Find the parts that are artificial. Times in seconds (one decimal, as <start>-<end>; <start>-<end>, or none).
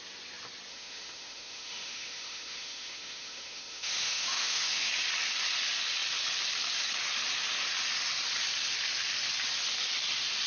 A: 0.7-4.9